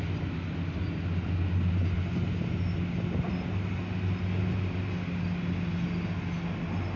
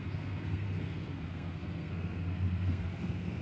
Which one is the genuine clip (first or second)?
first